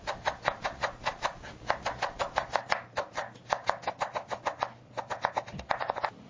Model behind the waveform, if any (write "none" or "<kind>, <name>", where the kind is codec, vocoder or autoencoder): none